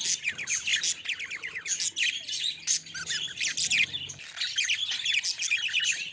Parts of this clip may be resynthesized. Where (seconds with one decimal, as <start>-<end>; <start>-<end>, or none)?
none